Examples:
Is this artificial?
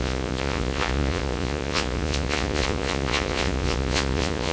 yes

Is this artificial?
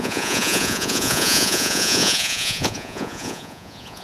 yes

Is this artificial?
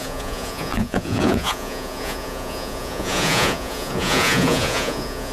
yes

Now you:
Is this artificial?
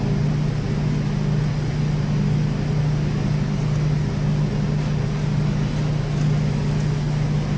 no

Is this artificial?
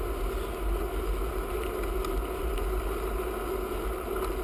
no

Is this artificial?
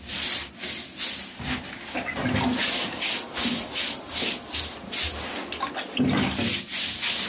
no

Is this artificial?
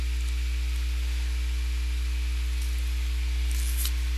no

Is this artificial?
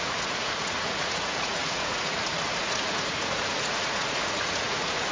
yes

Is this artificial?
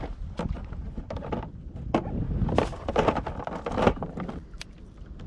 no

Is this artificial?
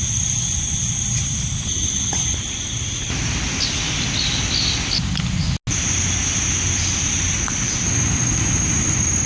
no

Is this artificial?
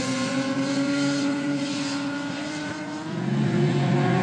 yes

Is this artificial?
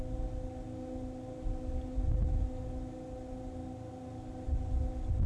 no